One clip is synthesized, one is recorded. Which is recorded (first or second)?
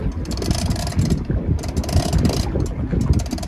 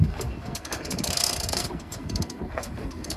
first